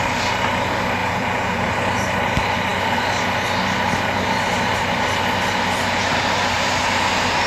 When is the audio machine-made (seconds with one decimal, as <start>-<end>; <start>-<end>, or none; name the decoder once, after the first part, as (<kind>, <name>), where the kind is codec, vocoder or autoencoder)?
1.0-1.7 (vocoder, BigVGAN v2)